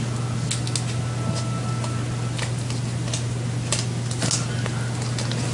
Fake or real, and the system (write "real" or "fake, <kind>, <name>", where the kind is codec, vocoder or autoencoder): real